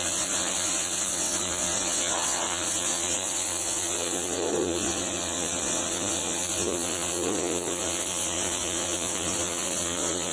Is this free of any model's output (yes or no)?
no